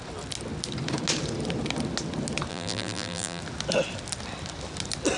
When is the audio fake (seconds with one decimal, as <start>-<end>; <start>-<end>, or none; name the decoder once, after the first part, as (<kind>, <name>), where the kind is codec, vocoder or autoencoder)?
2.5-3.4 (vocoder, BigVGAN v2)

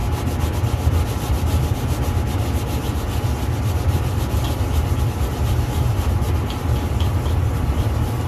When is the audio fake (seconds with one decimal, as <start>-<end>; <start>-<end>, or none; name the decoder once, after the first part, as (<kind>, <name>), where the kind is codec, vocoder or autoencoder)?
none